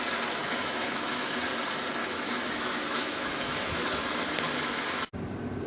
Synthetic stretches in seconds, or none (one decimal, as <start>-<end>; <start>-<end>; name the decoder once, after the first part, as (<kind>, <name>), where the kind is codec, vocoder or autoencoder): 0.4-1.3 (autoencoder, DAC-VAE); 2.0-4.0